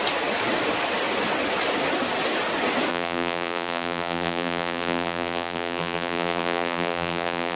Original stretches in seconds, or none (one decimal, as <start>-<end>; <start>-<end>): 0.0-2.9